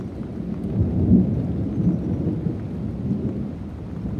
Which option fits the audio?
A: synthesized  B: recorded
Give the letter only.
B